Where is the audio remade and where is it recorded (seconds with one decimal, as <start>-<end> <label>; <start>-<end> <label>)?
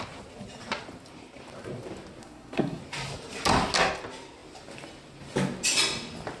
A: 0.0-2.2 recorded; 2.2-2.8 remade; 2.8-6.4 recorded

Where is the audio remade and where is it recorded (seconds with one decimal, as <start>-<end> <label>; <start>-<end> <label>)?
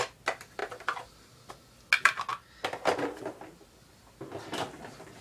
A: 0.0-5.2 recorded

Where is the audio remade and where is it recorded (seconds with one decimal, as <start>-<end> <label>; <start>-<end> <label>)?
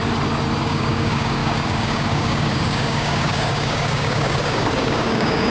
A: 0.0-0.6 recorded; 0.6-5.5 remade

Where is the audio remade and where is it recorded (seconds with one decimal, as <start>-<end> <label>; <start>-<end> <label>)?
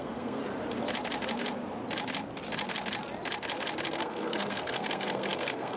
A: 0.0-0.4 remade; 0.4-3.9 recorded; 3.9-5.8 remade